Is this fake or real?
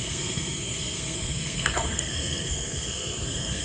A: fake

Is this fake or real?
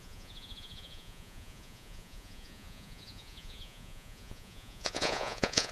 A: fake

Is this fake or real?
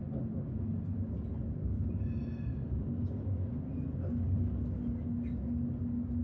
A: real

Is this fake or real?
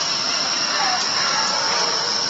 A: real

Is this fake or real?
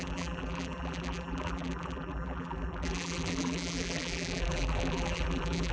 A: fake